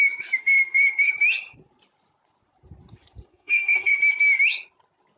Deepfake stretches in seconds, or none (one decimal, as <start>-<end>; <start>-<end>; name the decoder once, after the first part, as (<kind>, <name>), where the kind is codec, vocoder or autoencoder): 0.4-1.1 (codec, SNAC); 3.3-4.0